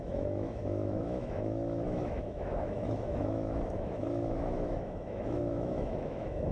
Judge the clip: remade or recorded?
remade